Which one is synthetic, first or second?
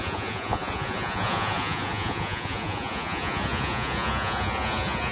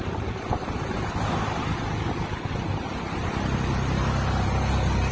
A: first